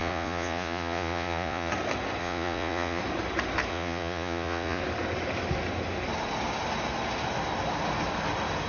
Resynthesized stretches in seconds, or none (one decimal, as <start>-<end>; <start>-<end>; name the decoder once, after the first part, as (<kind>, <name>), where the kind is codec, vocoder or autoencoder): 0.0-1.7 (vocoder, Vocos); 2.2-3.0; 3.7-4.8

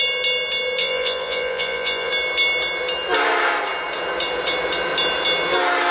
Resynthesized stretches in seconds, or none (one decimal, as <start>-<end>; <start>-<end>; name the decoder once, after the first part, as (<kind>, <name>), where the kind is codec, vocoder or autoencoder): 0.8-2.1 (vocoder, Vocos)